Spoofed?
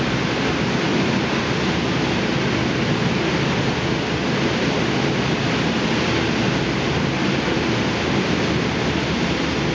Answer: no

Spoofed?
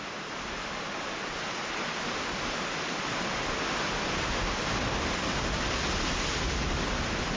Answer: no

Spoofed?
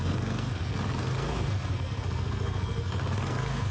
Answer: yes